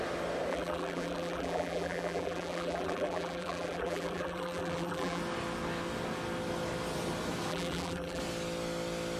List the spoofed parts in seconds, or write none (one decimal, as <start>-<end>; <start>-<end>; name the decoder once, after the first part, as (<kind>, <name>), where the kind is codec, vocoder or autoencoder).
0.5-5.2 (vocoder, BigVGAN v2); 7.5-8.2